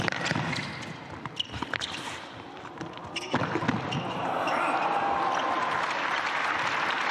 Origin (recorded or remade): recorded